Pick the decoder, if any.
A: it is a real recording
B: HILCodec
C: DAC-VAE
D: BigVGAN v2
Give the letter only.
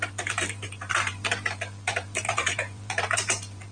D